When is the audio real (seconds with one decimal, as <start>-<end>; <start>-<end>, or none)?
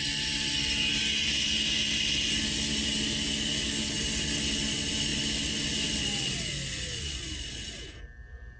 0.0-8.6